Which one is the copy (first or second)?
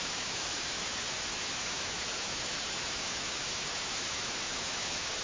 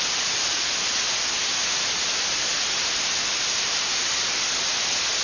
first